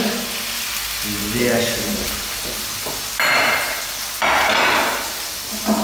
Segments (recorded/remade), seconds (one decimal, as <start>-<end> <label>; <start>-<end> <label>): 0.0-5.8 recorded